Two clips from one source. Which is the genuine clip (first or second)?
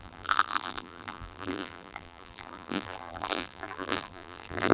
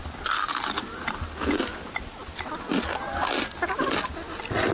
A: second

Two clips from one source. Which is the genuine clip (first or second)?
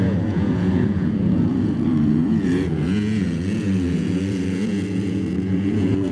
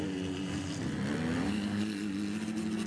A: second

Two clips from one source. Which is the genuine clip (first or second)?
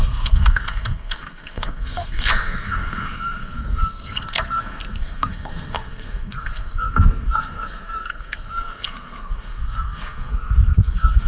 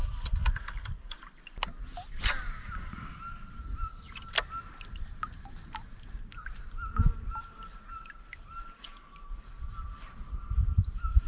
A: second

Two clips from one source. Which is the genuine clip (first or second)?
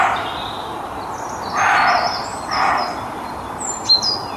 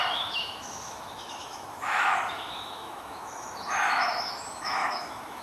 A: first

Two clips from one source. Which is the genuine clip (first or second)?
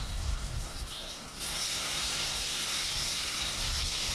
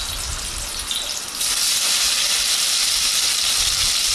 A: second